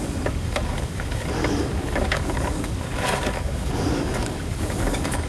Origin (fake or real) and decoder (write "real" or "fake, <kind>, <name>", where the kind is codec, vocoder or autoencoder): fake, codec, DAC